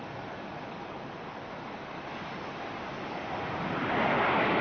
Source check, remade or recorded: recorded